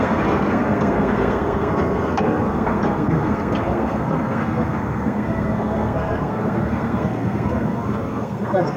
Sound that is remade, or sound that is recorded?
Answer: remade